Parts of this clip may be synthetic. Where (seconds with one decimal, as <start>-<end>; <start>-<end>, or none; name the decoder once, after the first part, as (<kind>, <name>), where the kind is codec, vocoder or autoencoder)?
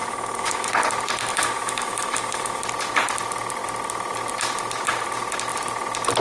0.0-0.7 (autoencoder, DAC-VAE); 1.3-2.6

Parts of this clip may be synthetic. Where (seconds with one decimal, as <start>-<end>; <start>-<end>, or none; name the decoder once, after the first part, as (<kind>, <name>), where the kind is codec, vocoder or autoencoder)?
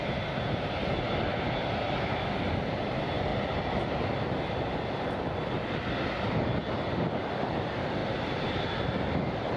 none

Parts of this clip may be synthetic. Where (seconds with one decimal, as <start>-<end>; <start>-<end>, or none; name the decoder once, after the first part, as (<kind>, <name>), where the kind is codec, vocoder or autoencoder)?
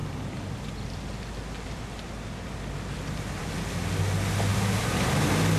none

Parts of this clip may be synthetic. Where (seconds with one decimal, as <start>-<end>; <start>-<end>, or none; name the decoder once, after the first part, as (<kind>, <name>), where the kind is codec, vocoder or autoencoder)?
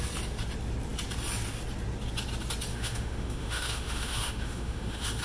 2.7-5.2 (autoencoder, DAC-VAE)